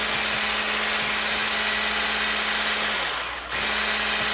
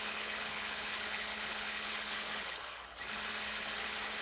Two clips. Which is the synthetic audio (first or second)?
second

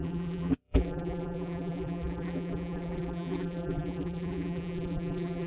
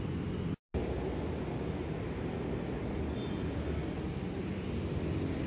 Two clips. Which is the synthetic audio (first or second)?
first